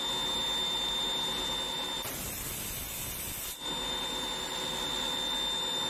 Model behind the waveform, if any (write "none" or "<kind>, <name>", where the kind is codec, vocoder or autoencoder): none